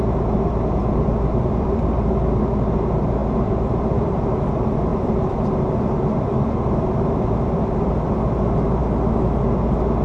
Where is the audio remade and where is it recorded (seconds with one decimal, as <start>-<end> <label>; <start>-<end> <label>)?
0.0-0.8 recorded; 0.8-2.7 remade; 2.7-3.2 recorded; 3.2-4.1 remade; 4.1-4.9 recorded; 4.9-5.6 remade; 5.6-10.0 recorded